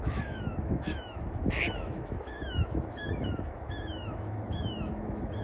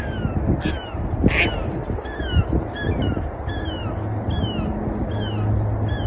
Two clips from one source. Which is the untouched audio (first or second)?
second